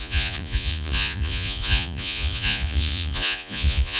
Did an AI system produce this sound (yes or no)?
yes